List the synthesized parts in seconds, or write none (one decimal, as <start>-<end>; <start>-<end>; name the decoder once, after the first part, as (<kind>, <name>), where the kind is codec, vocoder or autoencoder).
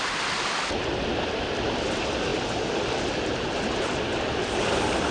none